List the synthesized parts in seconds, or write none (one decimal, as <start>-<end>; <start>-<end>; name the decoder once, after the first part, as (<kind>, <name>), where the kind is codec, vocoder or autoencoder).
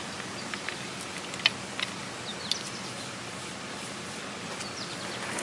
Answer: none